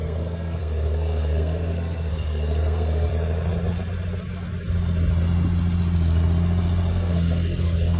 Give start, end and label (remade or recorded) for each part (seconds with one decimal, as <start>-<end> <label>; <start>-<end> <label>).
0.0-3.1 remade; 3.1-6.9 recorded; 6.9-8.0 remade

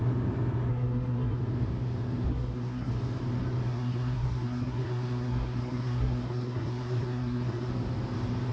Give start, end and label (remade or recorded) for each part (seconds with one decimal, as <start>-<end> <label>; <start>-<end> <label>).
0.0-0.7 recorded; 0.7-1.4 remade; 1.4-2.3 recorded; 2.3-2.9 remade; 2.9-3.7 recorded; 3.7-7.7 remade; 7.7-8.5 recorded

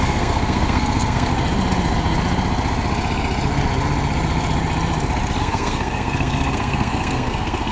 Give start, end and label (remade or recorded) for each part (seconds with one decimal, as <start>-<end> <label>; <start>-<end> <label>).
0.0-1.3 remade; 1.3-5.4 recorded; 5.4-7.7 remade

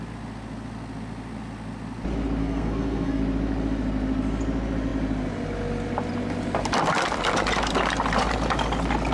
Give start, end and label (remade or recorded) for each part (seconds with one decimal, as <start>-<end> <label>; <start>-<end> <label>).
0.0-2.4 recorded; 2.4-3.2 remade; 3.2-9.1 recorded

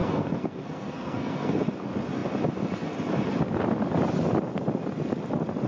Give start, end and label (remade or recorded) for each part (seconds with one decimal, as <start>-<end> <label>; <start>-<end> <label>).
0.0-1.6 remade; 1.6-5.7 recorded

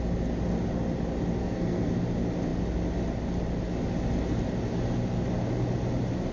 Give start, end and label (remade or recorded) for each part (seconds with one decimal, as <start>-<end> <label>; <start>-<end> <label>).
0.0-1.4 recorded; 1.4-1.9 remade; 1.9-6.3 recorded

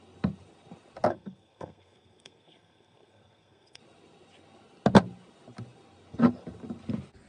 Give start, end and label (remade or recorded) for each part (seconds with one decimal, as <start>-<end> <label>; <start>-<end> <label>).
0.0-1.1 recorded; 1.1-3.8 remade; 3.8-7.3 recorded

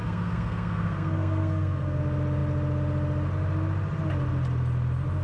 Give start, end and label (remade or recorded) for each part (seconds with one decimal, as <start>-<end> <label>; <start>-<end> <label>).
0.0-2.0 remade; 2.0-5.2 recorded